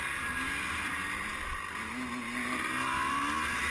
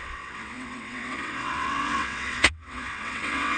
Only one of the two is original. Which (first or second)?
first